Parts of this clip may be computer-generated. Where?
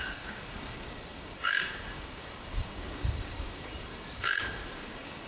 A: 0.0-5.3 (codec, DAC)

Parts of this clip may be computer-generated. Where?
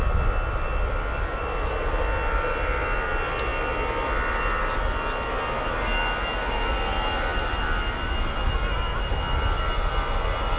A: none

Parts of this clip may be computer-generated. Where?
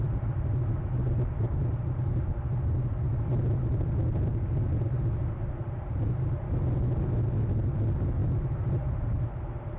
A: none